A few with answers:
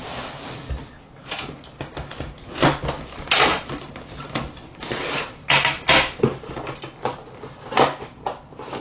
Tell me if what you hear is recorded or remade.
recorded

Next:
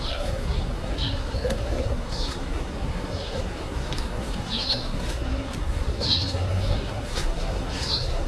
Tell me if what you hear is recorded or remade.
remade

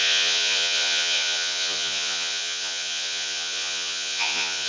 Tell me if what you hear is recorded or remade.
remade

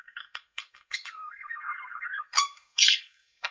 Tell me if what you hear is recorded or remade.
remade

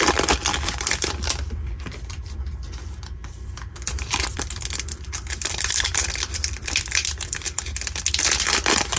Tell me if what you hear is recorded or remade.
remade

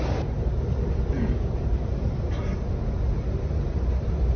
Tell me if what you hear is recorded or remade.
remade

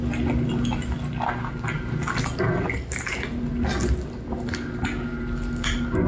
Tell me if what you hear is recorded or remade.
recorded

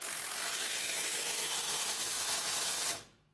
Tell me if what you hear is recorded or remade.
remade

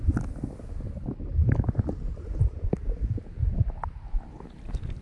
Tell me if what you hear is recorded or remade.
recorded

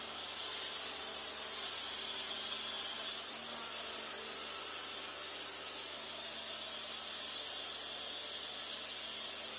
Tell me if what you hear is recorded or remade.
recorded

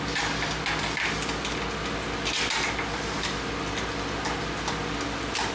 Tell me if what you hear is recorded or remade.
recorded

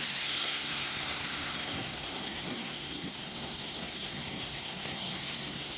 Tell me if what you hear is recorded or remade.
remade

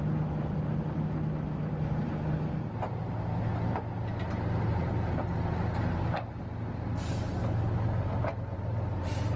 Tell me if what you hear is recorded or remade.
recorded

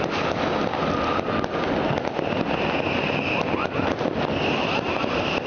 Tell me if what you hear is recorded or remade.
recorded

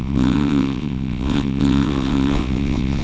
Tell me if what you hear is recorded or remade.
remade